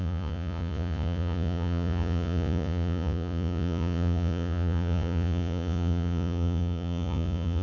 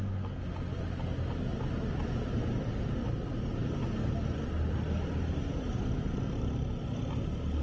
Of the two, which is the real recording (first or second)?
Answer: second